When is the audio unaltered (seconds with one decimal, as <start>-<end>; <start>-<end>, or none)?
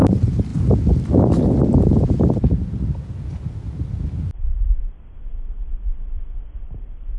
0.5-4.8; 5.9-6.6